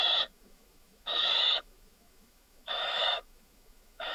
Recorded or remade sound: remade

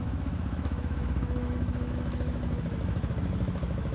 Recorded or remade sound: remade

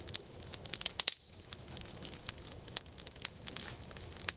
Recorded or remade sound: remade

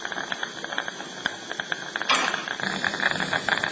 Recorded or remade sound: recorded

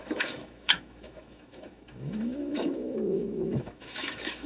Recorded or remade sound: remade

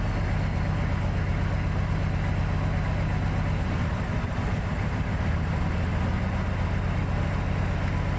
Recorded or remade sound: recorded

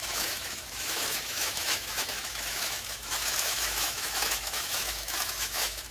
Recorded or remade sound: remade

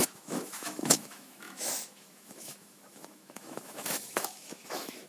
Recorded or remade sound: remade